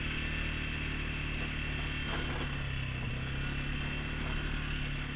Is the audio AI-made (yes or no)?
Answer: no